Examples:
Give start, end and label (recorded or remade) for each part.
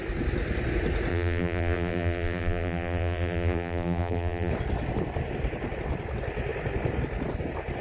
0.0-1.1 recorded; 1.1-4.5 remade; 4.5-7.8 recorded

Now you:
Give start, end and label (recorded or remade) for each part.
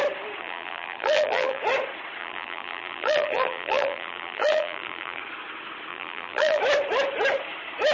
0.0-0.4 recorded; 0.4-1.6 remade; 1.6-2.2 recorded; 2.2-5.2 remade; 5.2-5.9 recorded; 5.9-6.6 remade; 6.6-7.9 recorded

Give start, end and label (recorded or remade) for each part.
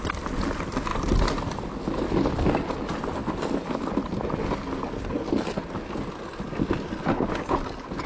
0.0-8.1 recorded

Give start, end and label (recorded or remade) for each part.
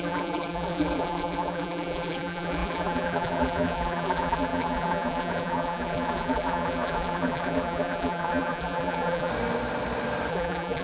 0.0-9.3 remade; 9.3-10.3 recorded; 10.3-10.8 remade